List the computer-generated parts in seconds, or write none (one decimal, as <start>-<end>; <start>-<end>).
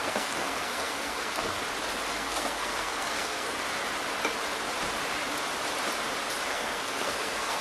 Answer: 0.0-1.6; 2.1-3.6; 6.5-7.6